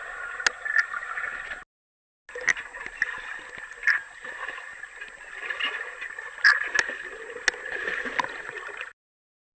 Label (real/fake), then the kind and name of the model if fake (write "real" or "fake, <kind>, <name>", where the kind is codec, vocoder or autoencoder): real